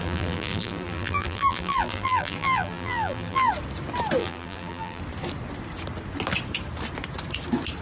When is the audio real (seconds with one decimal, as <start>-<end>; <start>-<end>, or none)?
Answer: 3.5-4.2; 5.0-7.8